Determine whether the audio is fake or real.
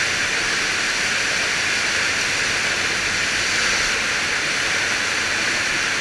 real